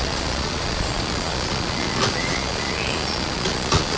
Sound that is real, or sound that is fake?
fake